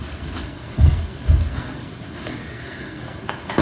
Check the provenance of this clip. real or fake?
fake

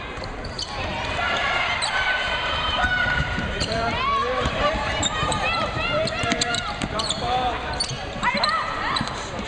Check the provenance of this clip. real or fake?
fake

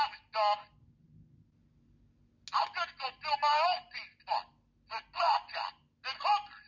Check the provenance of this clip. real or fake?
real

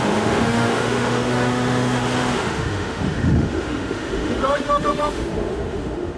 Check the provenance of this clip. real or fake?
fake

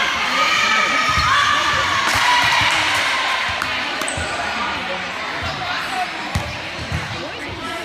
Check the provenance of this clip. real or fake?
fake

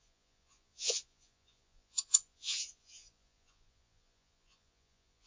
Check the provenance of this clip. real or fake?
fake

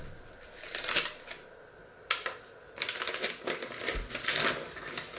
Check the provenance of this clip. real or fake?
real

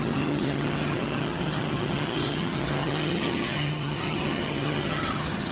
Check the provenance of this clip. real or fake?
fake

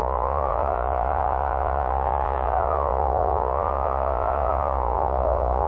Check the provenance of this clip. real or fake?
fake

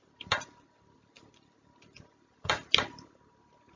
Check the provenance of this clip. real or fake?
real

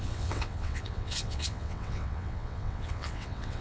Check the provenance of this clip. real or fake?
fake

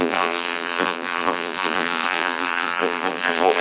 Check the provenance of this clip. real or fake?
fake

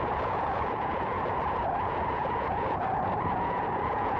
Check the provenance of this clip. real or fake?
fake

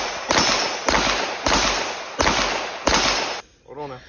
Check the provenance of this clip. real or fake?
real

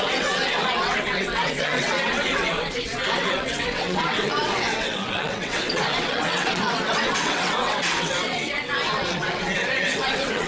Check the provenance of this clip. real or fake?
fake